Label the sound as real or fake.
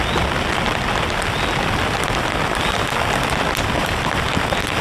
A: real